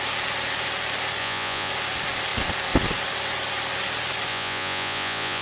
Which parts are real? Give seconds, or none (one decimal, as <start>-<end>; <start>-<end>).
0.0-1.2; 1.7-4.3